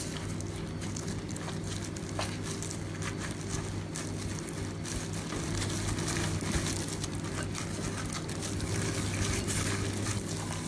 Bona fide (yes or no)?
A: yes